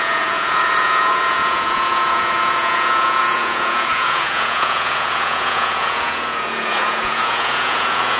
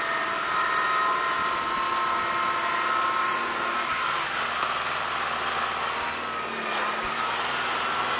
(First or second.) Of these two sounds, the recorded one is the second